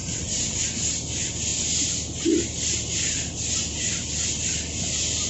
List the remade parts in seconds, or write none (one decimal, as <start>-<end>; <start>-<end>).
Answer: 0.0-0.6